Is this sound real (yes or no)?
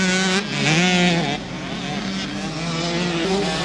yes